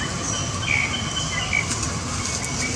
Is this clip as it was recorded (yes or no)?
yes